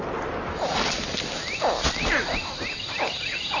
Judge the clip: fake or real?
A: real